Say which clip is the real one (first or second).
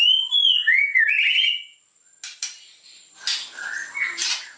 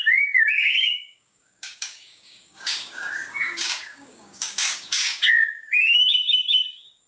first